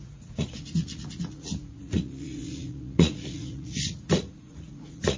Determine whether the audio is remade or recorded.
remade